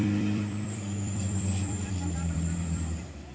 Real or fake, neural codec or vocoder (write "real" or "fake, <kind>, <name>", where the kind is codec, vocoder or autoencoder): fake, vocoder, BigVGAN v2